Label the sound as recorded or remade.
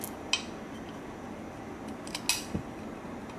recorded